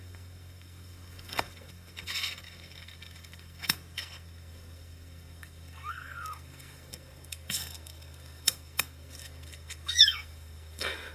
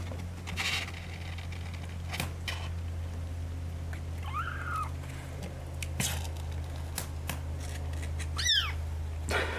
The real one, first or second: second